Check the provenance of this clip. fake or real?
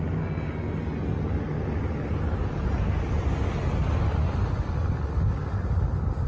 real